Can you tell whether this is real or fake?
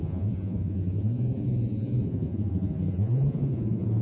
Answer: fake